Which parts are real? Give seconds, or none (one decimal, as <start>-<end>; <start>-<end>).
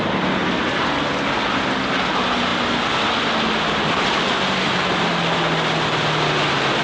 0.0-6.8